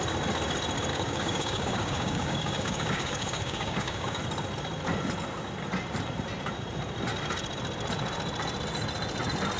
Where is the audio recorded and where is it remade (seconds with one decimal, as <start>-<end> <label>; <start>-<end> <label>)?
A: 0.0-0.9 recorded; 0.9-4.2 remade; 4.2-9.6 recorded

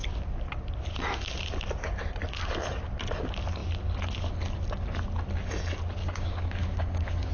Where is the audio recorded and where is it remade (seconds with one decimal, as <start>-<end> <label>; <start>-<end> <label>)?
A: 0.0-6.0 recorded; 6.0-7.3 remade